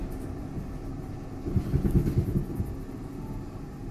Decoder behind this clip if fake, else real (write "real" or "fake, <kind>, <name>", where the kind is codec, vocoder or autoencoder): real